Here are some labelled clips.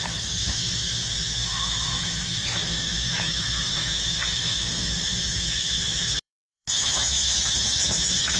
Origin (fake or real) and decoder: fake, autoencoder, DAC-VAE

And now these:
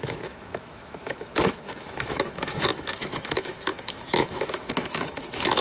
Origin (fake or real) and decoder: fake, autoencoder, DAC-VAE